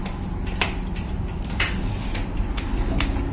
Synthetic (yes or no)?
no